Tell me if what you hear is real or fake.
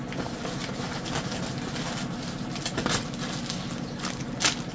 real